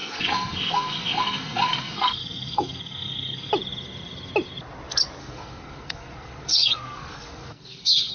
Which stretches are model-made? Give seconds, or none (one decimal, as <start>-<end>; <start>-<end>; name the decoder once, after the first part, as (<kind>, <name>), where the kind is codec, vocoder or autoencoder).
0.0-3.5 (codec, SNAC); 5.2-8.1